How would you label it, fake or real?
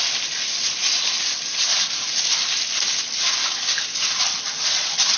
real